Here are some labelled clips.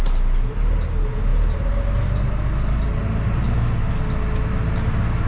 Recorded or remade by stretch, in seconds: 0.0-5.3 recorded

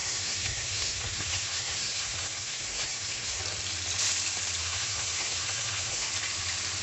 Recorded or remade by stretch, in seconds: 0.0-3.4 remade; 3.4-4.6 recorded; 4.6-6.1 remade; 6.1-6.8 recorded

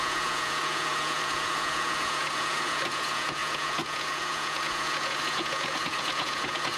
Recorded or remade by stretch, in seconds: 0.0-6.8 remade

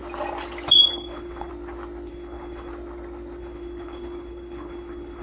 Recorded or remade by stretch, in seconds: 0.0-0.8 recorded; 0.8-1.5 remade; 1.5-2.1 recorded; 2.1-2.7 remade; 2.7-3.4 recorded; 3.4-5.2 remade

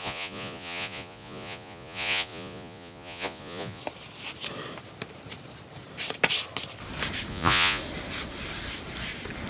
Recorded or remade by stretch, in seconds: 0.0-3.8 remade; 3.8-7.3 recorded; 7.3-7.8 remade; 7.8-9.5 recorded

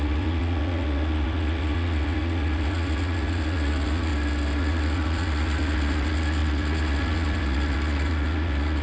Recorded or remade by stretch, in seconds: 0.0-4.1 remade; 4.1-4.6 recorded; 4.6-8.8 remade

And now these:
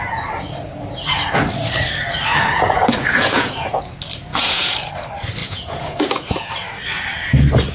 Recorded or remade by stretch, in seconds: 0.0-2.3 recorded; 2.3-3.8 remade; 3.8-4.3 recorded; 4.3-4.9 remade; 4.9-5.4 recorded; 5.4-6.5 remade; 6.5-7.7 recorded

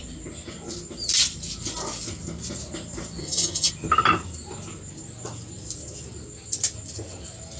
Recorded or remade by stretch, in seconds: 0.0-3.2 recorded; 3.2-3.7 remade; 3.7-7.6 recorded